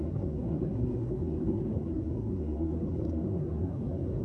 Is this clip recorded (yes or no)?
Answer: no